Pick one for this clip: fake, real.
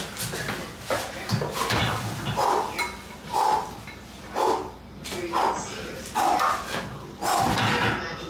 real